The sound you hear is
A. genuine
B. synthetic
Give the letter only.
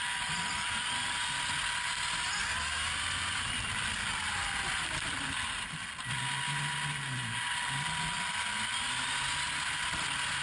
A